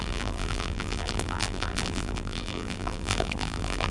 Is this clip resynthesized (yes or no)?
yes